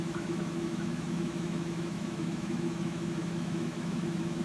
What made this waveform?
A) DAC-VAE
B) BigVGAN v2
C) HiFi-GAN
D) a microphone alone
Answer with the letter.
A